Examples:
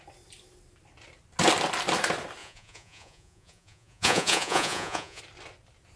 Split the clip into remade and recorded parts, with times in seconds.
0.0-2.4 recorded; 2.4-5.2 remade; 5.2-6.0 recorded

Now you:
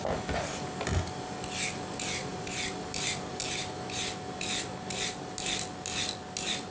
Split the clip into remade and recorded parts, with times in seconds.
0.0-6.7 recorded

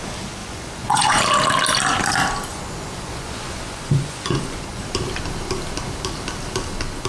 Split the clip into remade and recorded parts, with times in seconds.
0.0-0.4 recorded; 0.4-1.2 remade; 1.2-2.5 recorded; 2.5-4.8 remade; 4.8-7.1 recorded